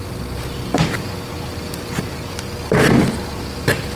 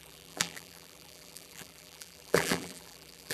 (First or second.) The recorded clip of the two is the first